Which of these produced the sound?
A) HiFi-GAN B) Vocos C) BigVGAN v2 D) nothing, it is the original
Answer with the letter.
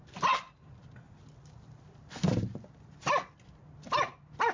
D